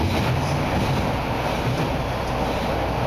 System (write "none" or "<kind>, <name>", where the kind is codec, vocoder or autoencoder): none